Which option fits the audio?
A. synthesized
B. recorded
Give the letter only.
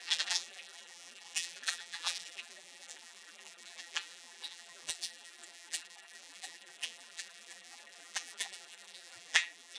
A